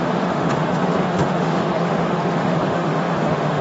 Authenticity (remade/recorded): remade